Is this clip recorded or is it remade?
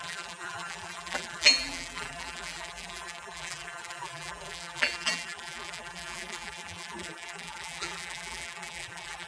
remade